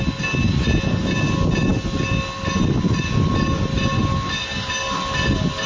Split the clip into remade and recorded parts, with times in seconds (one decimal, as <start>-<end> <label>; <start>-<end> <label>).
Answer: 0.0-5.7 recorded